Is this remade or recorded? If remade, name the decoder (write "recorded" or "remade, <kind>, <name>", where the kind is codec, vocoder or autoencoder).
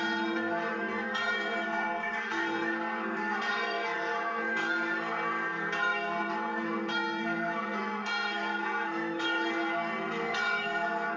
remade, codec, SNAC